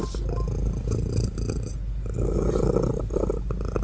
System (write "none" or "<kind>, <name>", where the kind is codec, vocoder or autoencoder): none